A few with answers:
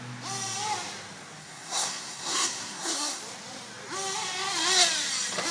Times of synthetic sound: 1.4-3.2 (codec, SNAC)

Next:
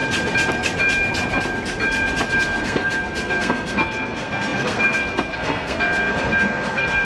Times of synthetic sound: 2.3-7.0 (codec, SNAC)

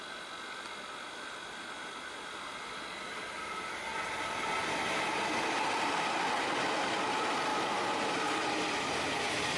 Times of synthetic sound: none

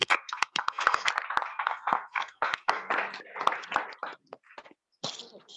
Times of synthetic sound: 0.0-1.1 (codec, SNAC); 1.5-2.9

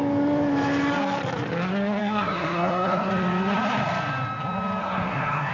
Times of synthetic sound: 2.0-3.1 (codec, SNAC); 4.8-5.5

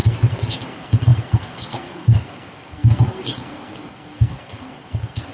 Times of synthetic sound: 0.0-5.3 (codec, SNAC)

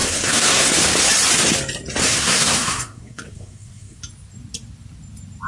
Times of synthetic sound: 0.0-0.7 (codec, SNAC); 2.0-4.0